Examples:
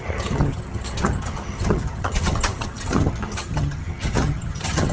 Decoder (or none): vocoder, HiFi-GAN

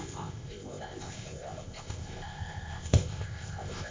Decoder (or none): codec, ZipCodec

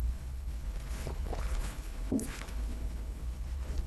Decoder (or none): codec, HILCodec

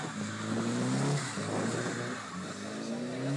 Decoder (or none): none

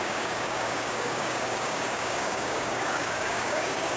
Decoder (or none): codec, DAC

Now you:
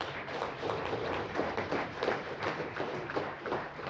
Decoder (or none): vocoder, BigVGAN v2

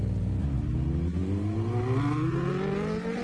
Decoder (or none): none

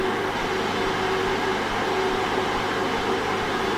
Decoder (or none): none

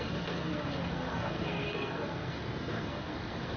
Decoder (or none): codec, SNAC